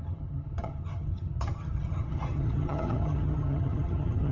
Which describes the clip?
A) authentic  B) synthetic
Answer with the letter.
B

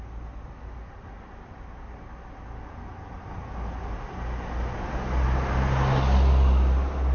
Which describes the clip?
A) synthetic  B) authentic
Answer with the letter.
B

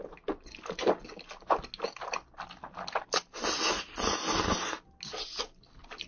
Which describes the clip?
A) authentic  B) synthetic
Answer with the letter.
A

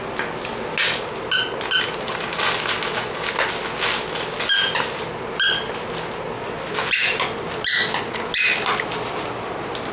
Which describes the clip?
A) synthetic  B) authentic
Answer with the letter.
B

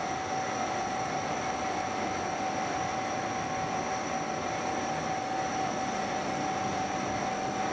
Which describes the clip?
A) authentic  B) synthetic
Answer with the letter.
A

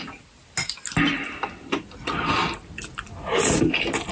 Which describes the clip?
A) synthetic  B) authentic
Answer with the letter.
B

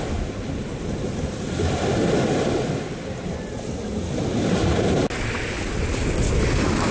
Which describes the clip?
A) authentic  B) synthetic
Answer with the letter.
A